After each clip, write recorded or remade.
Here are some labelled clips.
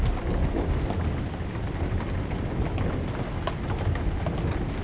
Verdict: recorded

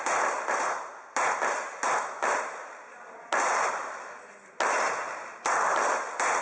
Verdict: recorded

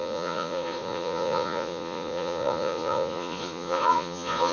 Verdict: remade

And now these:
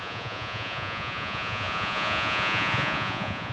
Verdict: remade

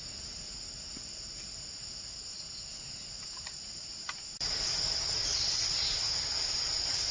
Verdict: recorded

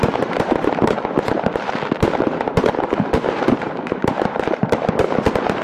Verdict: remade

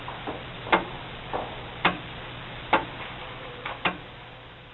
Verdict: recorded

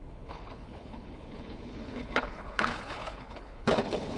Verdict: remade